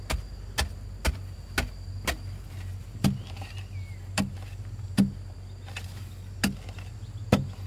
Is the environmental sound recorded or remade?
recorded